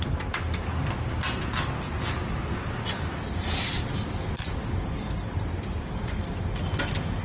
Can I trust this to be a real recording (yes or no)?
yes